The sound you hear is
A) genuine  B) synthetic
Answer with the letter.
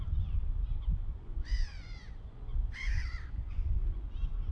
B